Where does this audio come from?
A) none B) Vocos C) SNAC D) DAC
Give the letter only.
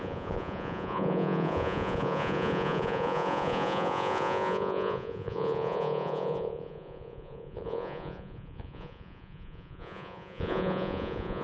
B